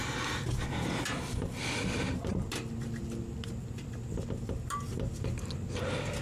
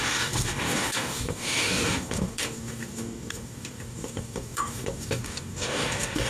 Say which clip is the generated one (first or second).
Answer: second